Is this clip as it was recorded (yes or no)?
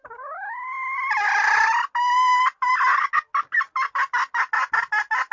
yes